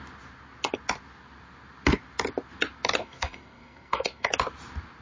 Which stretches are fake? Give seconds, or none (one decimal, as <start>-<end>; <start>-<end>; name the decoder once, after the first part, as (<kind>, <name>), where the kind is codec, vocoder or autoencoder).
3.0-4.3 (codec, SNAC)